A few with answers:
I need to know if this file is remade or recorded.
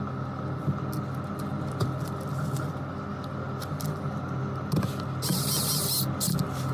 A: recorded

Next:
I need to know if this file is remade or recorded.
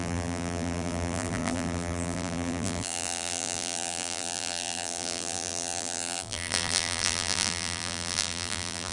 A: remade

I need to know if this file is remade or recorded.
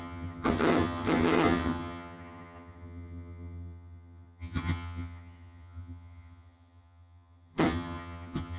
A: remade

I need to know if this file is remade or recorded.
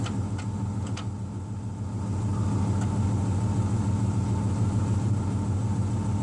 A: recorded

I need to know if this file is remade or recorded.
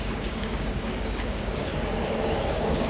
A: remade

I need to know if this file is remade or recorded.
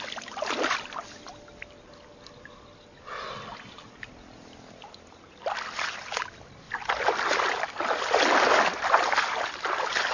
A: recorded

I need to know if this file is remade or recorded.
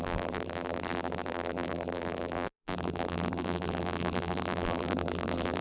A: remade